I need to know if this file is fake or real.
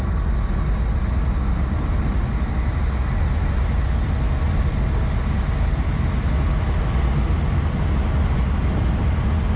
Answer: real